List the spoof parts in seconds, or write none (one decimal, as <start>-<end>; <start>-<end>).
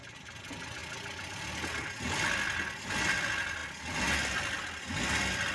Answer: none